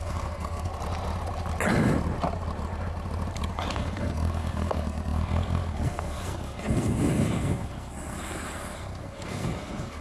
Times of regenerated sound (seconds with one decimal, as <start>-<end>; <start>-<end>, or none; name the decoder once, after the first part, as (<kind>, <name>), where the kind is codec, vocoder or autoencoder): 0.0-0.7 (codec, SNAC); 3.7-10.0